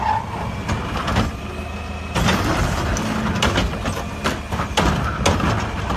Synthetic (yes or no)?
no